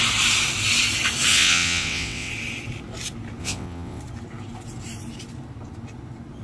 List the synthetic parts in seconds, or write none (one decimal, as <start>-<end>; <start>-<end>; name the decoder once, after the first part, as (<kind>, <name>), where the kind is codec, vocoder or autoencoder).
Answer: 1.3-2.3 (vocoder, WaveNeXt); 3.4-4.0